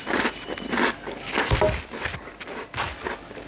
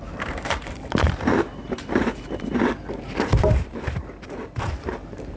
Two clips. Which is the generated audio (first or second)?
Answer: second